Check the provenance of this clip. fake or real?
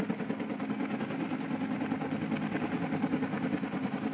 real